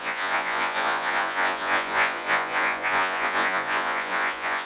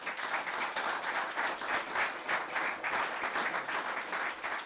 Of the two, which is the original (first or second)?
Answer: second